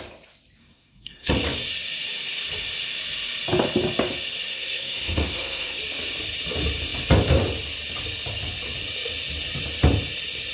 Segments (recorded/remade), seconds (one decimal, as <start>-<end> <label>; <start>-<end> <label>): 0.0-0.6 recorded; 0.6-1.3 remade; 1.3-4.5 recorded; 4.5-5.8 remade; 5.8-10.5 recorded